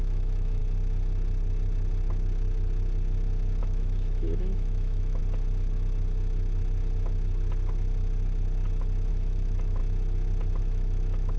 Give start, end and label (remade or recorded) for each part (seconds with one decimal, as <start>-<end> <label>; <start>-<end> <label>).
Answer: 0.0-0.6 remade; 0.6-3.6 recorded; 3.6-5.2 remade; 5.2-9.1 recorded; 9.1-9.8 remade; 9.8-10.6 recorded; 10.6-11.4 remade